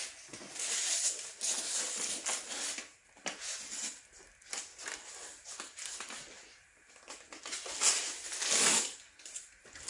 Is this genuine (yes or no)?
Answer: yes